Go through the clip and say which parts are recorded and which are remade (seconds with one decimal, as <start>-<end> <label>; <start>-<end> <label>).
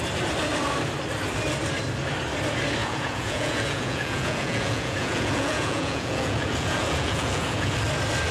0.0-2.8 recorded; 2.8-7.7 remade; 7.7-8.3 recorded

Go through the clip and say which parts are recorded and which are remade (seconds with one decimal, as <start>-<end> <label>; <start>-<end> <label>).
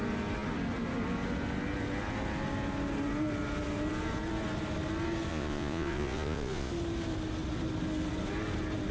0.0-5.3 recorded; 5.3-6.7 remade; 6.7-8.9 recorded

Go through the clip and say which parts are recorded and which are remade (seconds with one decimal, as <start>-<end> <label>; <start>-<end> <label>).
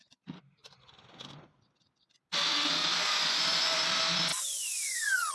0.0-2.8 recorded; 2.8-3.8 remade; 3.8-4.3 recorded; 4.3-5.3 remade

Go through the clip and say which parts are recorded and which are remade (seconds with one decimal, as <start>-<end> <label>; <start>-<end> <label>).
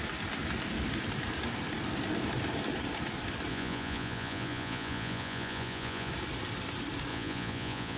0.0-3.5 recorded; 3.5-6.1 remade; 6.1-7.1 recorded; 7.1-8.0 remade